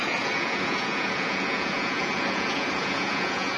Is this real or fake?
fake